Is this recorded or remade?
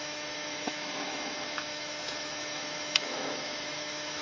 remade